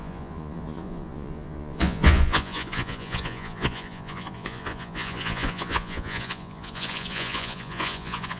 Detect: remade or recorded remade